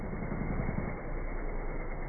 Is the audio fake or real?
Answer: real